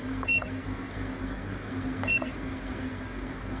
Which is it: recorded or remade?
remade